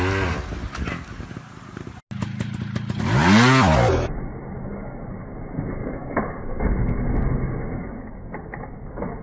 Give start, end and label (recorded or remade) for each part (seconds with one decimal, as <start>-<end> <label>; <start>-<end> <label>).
0.0-5.8 recorded; 5.8-6.7 remade; 6.7-9.2 recorded